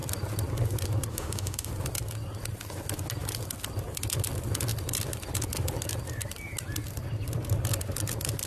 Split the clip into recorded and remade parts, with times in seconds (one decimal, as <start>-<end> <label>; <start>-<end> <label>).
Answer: 0.0-1.1 recorded; 1.1-1.7 remade; 1.7-8.5 recorded